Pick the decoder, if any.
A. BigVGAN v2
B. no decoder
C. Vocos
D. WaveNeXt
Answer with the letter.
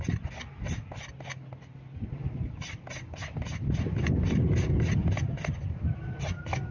B